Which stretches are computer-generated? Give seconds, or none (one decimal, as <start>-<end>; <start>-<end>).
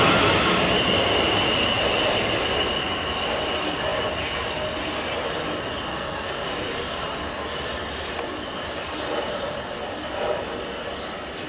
5.9-6.4